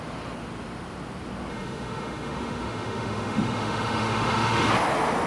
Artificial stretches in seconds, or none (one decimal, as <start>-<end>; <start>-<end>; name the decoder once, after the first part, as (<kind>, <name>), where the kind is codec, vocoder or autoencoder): 1.5-4.7 (autoencoder, DAC-VAE)